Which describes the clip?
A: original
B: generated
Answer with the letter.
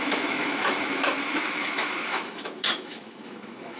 B